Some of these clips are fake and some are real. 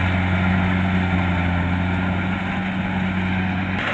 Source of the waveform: real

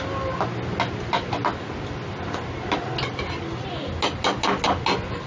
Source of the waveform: real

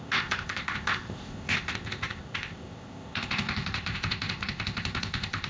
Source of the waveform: fake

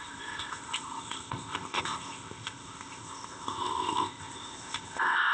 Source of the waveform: fake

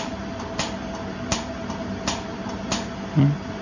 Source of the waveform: real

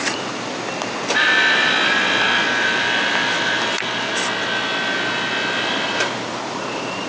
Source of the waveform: real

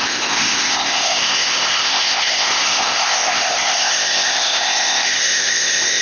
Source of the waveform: fake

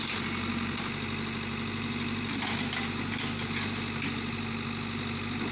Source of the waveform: real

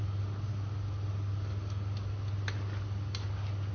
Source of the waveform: real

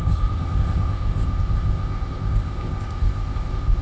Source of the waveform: fake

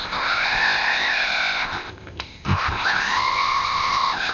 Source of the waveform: fake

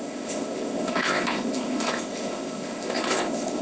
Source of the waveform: fake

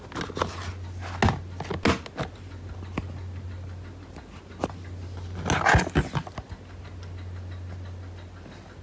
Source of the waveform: real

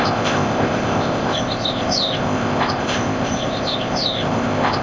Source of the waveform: fake